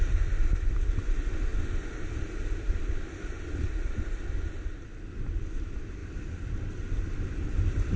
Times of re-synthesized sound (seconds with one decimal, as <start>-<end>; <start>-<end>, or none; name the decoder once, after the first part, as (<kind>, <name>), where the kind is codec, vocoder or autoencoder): none